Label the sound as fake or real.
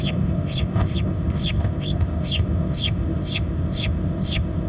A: fake